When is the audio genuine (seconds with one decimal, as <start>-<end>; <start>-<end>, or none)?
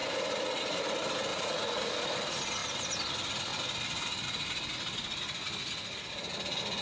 0.8-1.3; 1.9-6.8